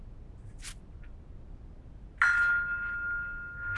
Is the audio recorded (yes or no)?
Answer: yes